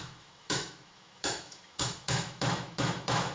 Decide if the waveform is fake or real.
fake